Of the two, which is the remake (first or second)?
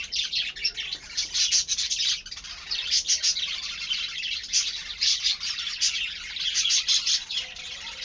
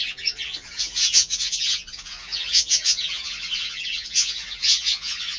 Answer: second